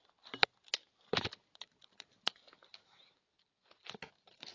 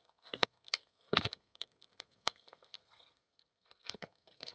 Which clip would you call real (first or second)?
first